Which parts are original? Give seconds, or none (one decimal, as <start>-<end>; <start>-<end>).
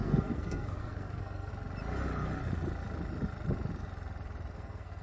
1.5-4.5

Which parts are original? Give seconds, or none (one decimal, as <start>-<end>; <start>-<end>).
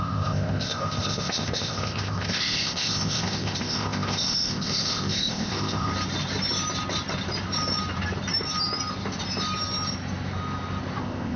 5.9-11.0